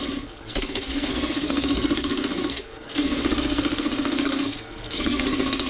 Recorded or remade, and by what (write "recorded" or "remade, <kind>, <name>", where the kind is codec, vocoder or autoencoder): remade, codec, SNAC